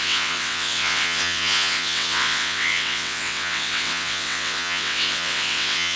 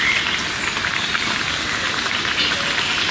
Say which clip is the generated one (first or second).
first